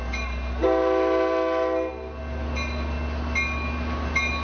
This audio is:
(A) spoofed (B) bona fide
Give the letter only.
B